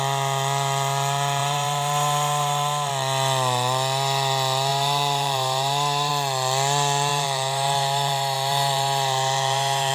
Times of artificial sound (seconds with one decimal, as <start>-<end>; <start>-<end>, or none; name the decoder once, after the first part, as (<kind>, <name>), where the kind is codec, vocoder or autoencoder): 1.4-2.9 (vocoder, BigVGAN v2); 4.7-6.1; 7.1-9.9